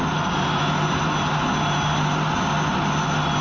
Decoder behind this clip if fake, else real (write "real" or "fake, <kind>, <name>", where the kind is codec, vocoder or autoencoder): real